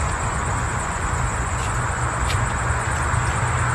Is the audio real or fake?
fake